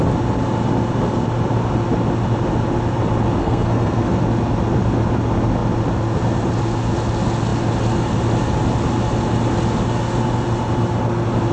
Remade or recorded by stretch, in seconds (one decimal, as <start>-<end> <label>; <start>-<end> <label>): 0.0-3.4 recorded; 3.4-4.2 remade; 4.2-11.5 recorded